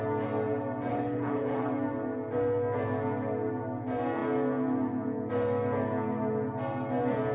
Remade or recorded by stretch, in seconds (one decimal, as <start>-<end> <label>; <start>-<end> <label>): 0.0-0.9 recorded; 0.9-1.7 remade; 1.7-7.3 recorded